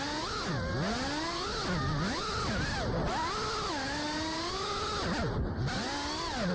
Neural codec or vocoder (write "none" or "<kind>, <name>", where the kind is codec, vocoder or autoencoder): none